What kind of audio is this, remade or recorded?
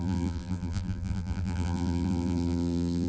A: remade